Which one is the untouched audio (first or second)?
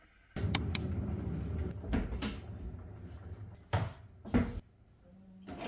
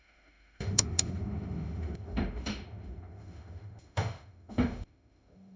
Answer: first